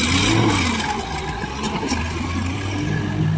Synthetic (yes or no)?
no